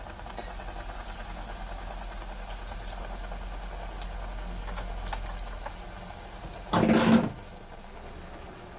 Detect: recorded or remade recorded